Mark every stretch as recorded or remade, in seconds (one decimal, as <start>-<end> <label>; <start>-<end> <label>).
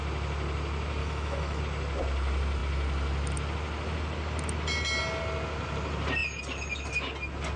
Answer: 0.0-1.0 recorded; 1.0-1.6 remade; 1.6-7.6 recorded